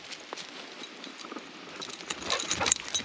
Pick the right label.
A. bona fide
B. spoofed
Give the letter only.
A